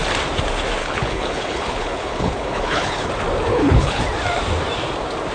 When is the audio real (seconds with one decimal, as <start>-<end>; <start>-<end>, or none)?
0.0-0.8; 3.1-3.5; 4.0-5.3